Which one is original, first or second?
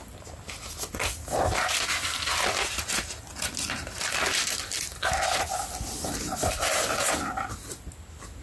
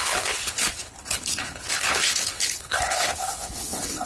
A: first